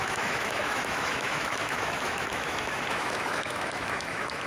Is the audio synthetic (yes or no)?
yes